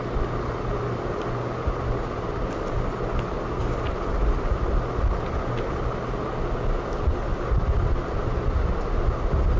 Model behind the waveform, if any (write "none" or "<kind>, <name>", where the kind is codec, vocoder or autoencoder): none